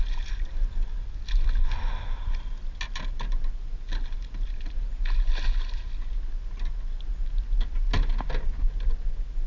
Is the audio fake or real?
real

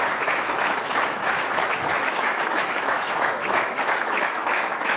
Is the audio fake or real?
fake